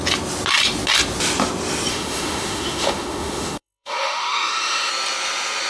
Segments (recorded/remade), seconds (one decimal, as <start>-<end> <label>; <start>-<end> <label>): 0.0-1.9 recorded; 1.9-4.9 remade; 4.9-5.7 recorded